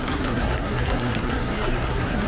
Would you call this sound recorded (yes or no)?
no